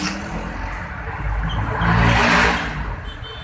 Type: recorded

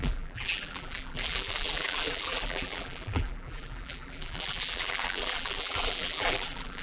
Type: remade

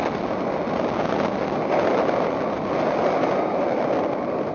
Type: recorded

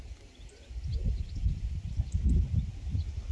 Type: recorded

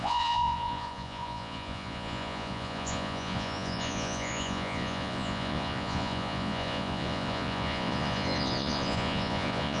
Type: remade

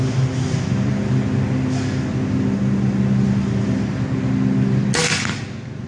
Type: recorded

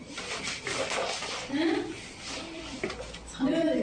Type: remade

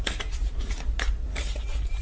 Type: recorded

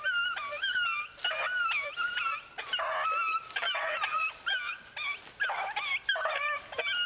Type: recorded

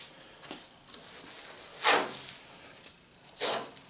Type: recorded